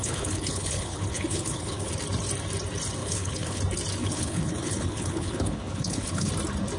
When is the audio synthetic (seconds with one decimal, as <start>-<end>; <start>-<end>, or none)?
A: 0.0-1.9; 3.0-3.6; 4.0-6.3